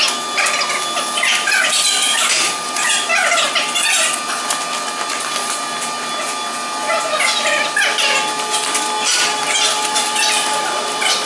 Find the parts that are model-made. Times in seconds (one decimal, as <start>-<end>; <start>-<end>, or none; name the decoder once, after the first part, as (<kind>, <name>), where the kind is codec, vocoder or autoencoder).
1.3-3.4 (vocoder, BigVGAN v2)